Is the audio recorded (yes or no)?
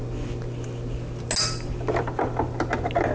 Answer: yes